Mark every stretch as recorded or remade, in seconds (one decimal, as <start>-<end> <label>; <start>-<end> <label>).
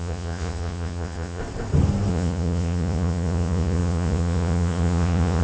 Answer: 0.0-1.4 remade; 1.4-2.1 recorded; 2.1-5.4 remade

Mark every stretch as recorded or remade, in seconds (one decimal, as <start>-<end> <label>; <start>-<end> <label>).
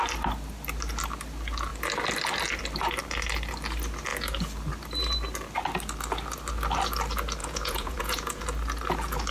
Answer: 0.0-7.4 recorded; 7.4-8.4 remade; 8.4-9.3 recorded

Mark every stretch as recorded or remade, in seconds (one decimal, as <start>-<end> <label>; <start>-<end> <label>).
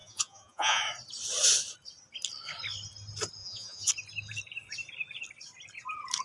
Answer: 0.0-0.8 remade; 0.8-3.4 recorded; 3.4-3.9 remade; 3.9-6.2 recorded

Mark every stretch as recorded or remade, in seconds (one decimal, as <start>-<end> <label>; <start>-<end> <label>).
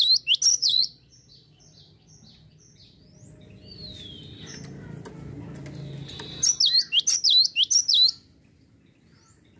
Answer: 0.0-0.5 recorded; 0.5-1.6 remade; 1.6-9.6 recorded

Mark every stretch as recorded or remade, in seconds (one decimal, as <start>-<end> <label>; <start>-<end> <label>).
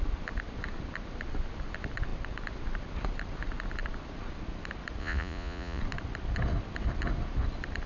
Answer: 0.0-5.0 recorded; 5.0-5.8 remade; 5.8-7.9 recorded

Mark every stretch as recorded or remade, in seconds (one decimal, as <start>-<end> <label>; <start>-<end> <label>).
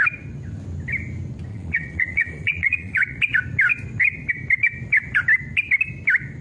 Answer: 0.0-1.5 recorded; 1.5-3.2 remade; 3.2-6.4 recorded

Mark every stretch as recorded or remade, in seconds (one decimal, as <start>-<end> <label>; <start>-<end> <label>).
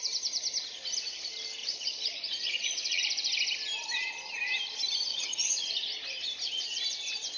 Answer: 0.0-1.6 recorded; 1.6-3.0 remade; 3.0-5.1 recorded; 5.1-5.7 remade; 5.7-7.4 recorded